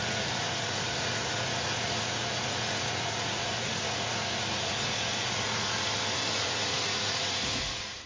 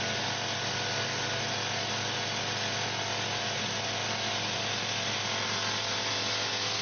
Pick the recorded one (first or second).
second